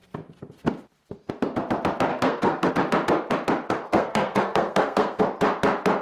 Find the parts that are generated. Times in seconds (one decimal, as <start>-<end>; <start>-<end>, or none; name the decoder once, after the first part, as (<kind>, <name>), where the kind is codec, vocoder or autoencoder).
2.1-2.7 (codec, SNAC); 3.9-5.2

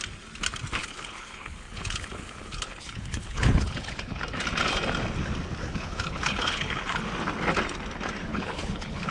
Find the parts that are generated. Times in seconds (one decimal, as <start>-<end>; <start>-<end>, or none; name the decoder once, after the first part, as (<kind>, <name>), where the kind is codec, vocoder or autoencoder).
0.8-4.2 (codec, HILCodec); 5.6-7.0; 8.3-9.1